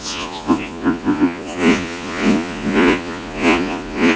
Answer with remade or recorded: remade